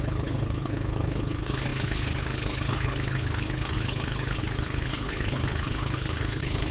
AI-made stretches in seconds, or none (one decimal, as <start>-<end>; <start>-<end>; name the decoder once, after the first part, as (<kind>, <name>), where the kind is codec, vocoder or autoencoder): 0.0-6.7 (codec, HILCodec)